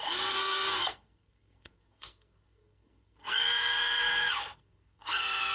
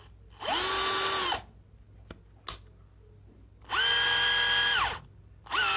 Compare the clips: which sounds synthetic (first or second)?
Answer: first